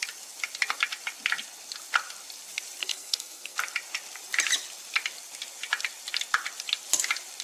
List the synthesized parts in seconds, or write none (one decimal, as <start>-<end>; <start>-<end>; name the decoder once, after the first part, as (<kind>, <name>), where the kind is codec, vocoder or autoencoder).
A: 2.8-3.6 (codec, SNAC)